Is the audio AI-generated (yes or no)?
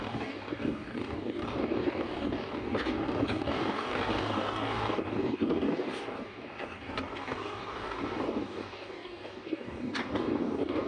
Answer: yes